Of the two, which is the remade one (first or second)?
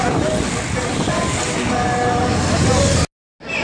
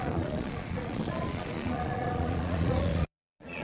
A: second